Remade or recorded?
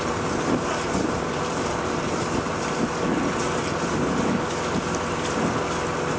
recorded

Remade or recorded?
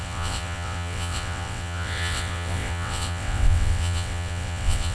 remade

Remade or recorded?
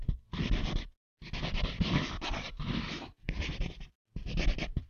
remade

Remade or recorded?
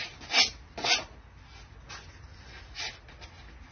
recorded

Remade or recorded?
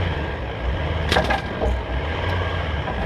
remade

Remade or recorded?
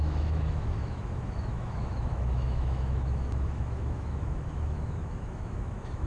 remade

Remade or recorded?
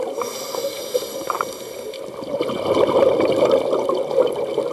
recorded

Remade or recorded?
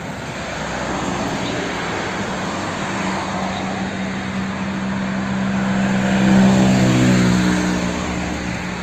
recorded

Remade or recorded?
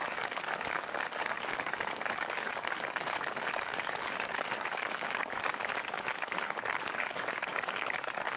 remade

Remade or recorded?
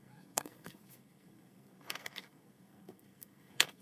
remade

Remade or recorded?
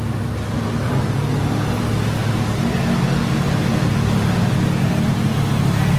recorded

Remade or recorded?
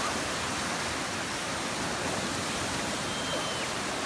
recorded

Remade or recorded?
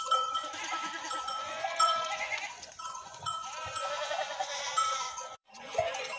remade